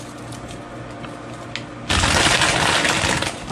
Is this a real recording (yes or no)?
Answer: yes